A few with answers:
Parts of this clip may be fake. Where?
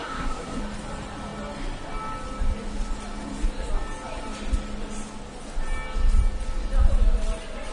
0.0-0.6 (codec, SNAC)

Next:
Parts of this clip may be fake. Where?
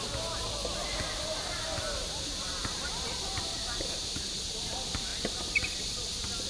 0.9-4.4 (vocoder, BigVGAN v2)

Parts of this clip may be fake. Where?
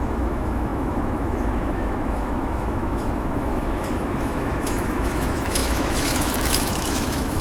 0.0-7.4 (autoencoder, DAC-VAE)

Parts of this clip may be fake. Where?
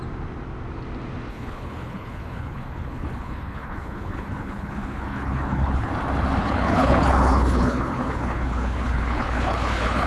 1.3-5.9 (codec, HILCodec); 6.4-10.1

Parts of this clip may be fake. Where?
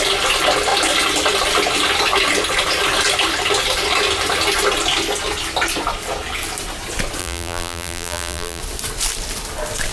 7.2-8.6 (vocoder, BigVGAN v2)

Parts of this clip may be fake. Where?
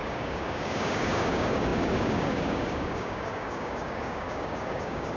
0.0-5.2 (codec, DAC)